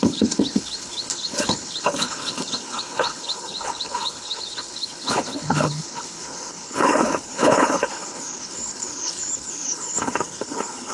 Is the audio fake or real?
fake